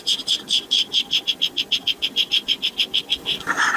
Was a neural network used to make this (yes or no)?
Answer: no